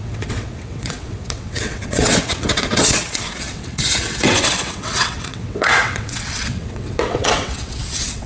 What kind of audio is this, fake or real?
fake